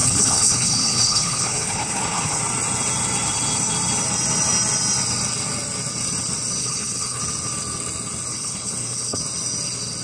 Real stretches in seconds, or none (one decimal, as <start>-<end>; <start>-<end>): 2.4-6.6; 7.2-8.3; 9.2-10.0